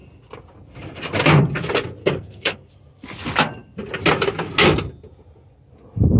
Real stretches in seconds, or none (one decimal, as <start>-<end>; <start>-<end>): 0.0-2.0; 2.7-6.2